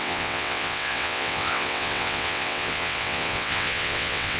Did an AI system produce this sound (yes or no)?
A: yes